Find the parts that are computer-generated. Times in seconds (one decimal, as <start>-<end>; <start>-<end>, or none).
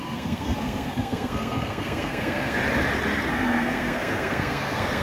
0.0-2.6; 3.3-5.0